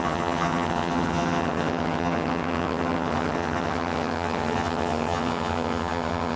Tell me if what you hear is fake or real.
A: fake